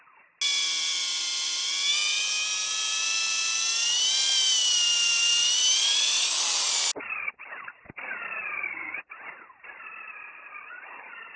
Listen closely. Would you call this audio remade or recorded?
recorded